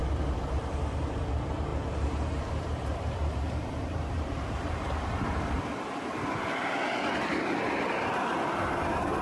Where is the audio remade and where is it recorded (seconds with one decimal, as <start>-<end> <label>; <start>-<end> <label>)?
0.0-0.7 remade; 0.7-1.7 recorded; 1.7-5.6 remade; 5.6-9.2 recorded